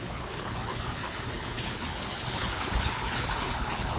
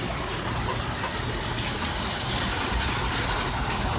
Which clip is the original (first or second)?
second